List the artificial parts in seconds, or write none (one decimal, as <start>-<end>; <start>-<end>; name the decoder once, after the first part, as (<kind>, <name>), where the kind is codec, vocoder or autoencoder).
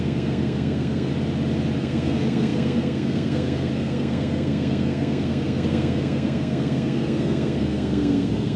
0.0-1.1 (codec, SNAC); 1.8-8.6